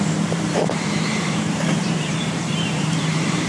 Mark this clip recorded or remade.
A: remade